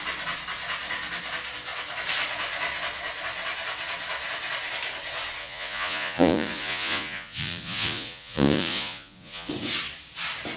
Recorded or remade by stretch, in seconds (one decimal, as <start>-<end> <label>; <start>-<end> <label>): 0.0-5.4 recorded; 5.4-9.5 remade; 9.5-10.6 recorded